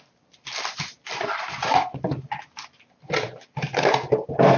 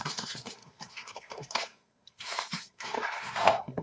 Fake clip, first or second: second